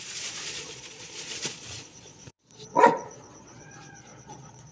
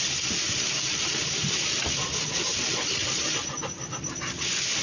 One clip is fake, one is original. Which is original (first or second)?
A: second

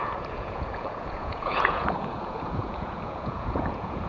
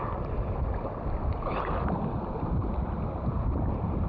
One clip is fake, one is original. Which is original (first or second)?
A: second